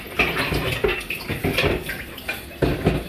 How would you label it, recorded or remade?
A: recorded